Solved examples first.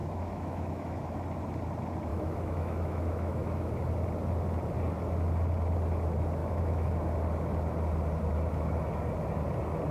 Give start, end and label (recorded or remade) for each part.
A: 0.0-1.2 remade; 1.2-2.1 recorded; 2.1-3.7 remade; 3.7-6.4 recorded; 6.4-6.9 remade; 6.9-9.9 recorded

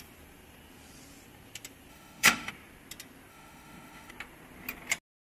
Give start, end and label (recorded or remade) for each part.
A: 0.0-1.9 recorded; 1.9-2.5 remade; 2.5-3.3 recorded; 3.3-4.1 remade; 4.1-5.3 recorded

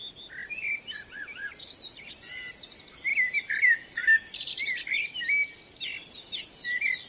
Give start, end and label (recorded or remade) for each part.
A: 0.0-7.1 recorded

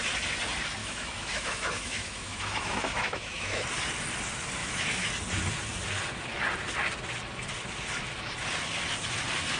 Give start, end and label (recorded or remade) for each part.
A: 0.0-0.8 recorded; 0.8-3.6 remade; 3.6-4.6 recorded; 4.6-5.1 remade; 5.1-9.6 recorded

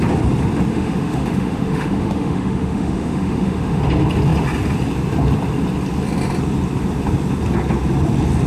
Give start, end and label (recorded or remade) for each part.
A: 0.0-0.7 recorded; 0.7-3.8 remade; 3.8-8.5 recorded